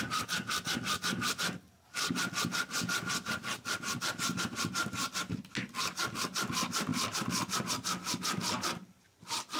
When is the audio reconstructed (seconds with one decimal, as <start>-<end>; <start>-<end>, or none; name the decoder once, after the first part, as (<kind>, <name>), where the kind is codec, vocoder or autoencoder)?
none